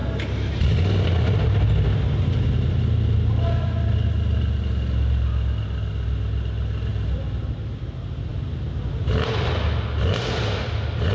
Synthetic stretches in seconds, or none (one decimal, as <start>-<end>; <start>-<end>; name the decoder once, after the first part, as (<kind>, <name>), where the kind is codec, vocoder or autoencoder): none